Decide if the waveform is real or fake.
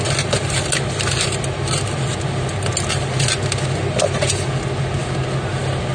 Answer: real